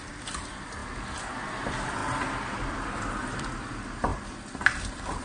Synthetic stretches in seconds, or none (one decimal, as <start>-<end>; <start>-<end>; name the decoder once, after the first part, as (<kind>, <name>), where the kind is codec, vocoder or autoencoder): 0.0-0.8 (vocoder, BigVGAN v2); 1.5-2.0; 2.7-4.1